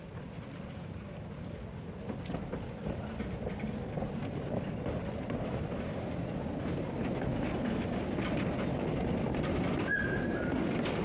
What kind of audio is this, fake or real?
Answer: real